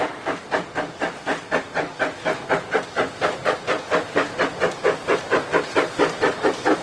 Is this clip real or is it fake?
real